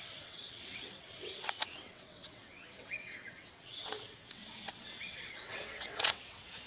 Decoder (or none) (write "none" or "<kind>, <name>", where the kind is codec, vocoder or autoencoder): vocoder, WaveNeXt